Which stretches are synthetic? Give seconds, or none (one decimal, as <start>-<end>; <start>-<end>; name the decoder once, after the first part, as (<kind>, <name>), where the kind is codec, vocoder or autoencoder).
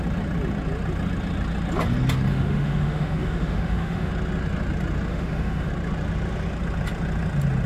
2.3-4.1 (autoencoder, DAC-VAE); 5.1-5.7